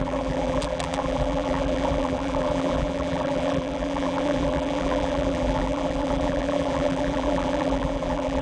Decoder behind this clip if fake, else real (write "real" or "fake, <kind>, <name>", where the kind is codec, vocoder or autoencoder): fake, vocoder, BigVGAN v2